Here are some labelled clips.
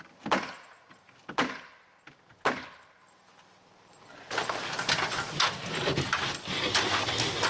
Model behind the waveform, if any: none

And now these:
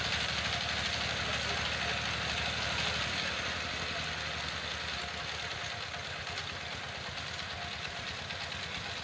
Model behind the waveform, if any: none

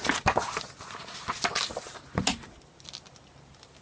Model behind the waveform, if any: none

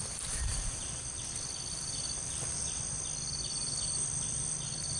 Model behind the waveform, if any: none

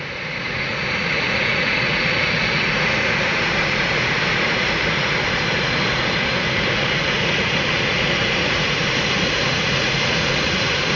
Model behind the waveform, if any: vocoder, Vocos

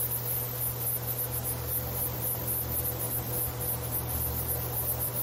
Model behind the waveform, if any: none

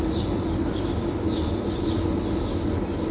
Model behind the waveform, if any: none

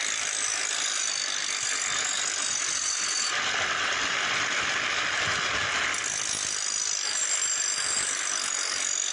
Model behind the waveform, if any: none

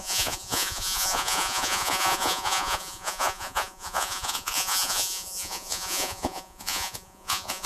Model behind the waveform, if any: vocoder, Vocos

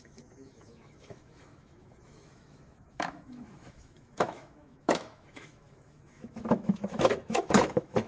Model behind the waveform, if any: autoencoder, DAC-VAE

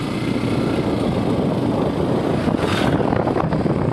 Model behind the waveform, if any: none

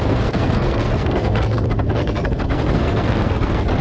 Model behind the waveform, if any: codec, SNAC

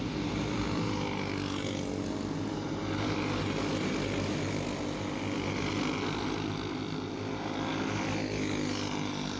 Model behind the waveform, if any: none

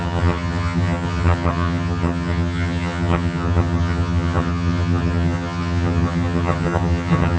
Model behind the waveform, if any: vocoder, HiFi-GAN